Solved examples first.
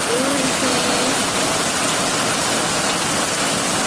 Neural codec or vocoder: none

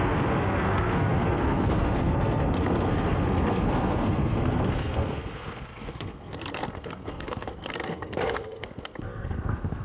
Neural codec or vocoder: codec, SNAC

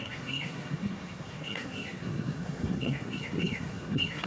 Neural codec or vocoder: codec, SNAC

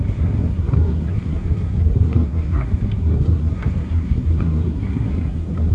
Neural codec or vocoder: codec, SNAC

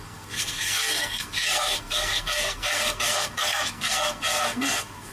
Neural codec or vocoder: codec, SNAC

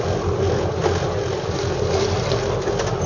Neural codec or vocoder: none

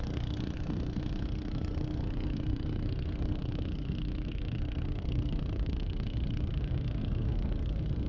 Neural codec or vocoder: codec, SNAC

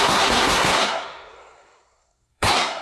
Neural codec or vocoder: codec, SNAC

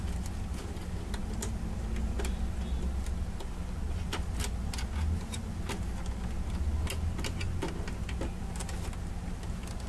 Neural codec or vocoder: none